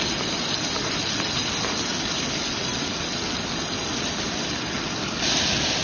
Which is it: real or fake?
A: real